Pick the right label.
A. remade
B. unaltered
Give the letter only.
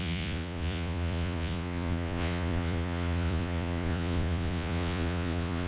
A